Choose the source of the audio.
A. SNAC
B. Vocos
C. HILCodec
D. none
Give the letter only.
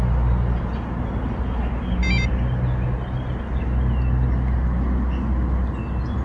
D